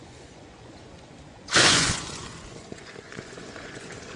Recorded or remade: remade